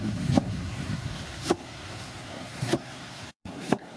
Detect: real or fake fake